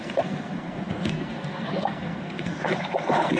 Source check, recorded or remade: remade